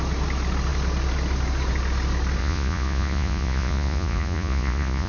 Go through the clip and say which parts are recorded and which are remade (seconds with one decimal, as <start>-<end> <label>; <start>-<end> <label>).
0.0-2.4 recorded; 2.4-5.1 remade